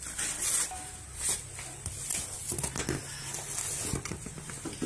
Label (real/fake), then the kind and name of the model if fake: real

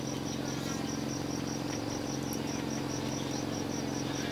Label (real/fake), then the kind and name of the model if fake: real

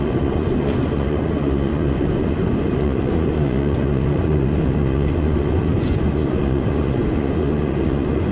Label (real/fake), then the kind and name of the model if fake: fake, vocoder, Vocos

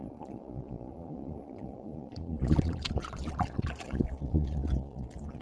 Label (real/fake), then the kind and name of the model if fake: fake, vocoder, Vocos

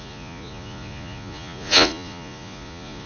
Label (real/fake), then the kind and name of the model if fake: fake, vocoder, Vocos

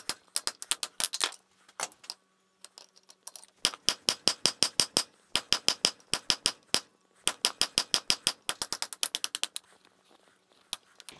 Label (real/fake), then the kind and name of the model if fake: real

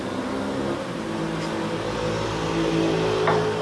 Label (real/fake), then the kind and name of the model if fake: real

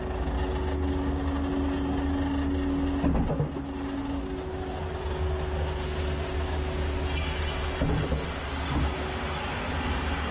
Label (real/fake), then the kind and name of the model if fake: real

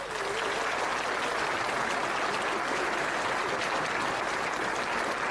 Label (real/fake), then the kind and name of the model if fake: real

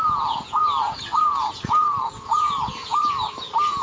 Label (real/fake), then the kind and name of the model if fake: fake, vocoder, Vocos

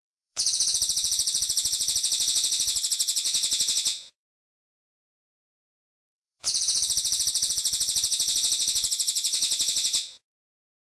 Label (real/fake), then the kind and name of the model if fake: fake, vocoder, Vocos